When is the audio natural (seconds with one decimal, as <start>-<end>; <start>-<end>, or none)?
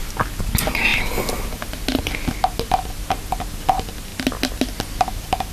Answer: 0.0-5.5